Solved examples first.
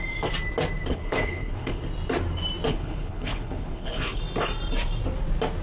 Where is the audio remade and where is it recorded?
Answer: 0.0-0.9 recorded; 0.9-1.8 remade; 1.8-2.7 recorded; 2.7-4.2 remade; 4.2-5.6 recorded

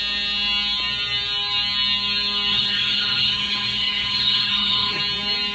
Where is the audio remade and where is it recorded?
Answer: 0.0-2.5 recorded; 2.5-5.0 remade; 5.0-5.5 recorded

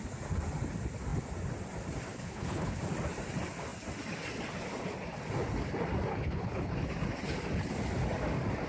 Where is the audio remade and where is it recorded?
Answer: 0.0-2.1 recorded; 2.1-2.8 remade; 2.8-6.1 recorded; 6.1-6.7 remade; 6.7-8.7 recorded

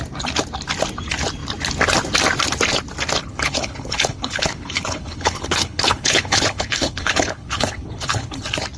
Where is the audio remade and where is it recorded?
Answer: 0.0-3.3 recorded; 3.3-8.4 remade; 8.4-8.8 recorded